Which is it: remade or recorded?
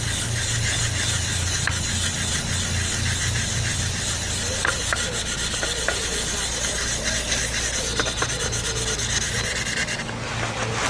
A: recorded